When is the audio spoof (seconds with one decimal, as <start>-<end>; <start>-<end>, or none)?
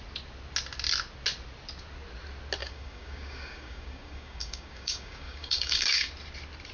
2.6-6.1